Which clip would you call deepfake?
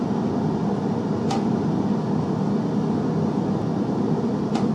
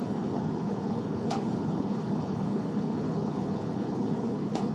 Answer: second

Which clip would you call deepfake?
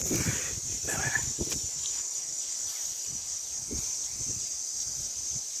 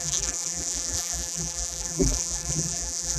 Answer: second